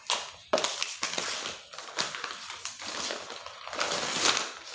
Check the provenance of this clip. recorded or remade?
recorded